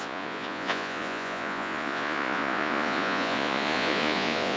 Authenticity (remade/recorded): remade